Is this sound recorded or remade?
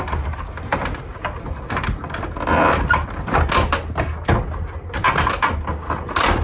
recorded